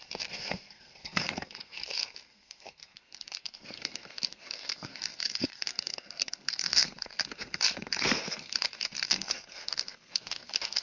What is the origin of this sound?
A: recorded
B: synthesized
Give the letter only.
B